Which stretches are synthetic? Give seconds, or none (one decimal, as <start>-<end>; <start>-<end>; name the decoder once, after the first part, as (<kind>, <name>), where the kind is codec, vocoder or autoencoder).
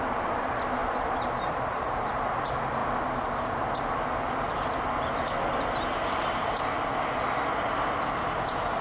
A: none